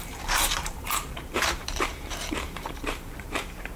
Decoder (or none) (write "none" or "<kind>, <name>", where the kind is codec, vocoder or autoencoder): vocoder, BigVGAN v2